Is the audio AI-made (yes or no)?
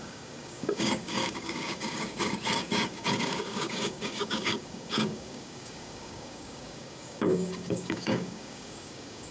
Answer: yes